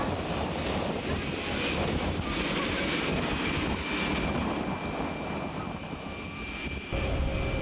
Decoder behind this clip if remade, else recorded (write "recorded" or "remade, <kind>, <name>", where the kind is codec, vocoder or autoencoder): recorded